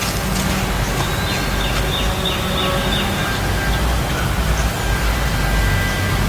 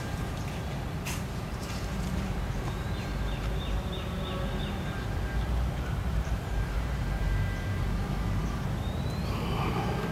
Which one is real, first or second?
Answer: first